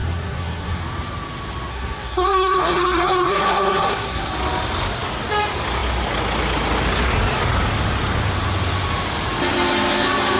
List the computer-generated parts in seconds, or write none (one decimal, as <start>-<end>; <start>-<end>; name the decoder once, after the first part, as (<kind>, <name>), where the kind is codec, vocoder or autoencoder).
0.0-0.8 (codec, SNAC); 1.7-4.3